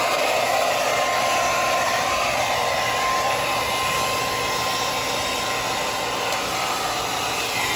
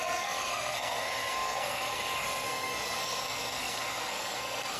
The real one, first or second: first